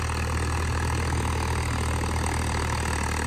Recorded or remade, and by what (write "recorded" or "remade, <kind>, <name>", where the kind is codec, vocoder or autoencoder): recorded